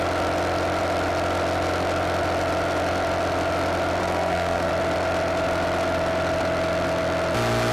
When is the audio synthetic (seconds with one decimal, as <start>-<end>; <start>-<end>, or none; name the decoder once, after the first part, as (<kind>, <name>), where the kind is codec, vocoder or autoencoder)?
4.0-4.7 (codec, SNAC)